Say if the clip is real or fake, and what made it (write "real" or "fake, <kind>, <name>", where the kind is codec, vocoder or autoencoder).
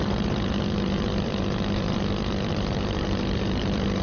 fake, vocoder, BigVGAN v2